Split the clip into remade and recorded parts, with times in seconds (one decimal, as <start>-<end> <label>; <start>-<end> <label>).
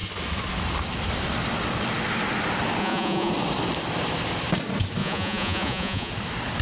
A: 0.0-2.8 recorded; 2.8-3.3 remade; 3.3-5.0 recorded; 5.0-6.1 remade; 6.1-6.6 recorded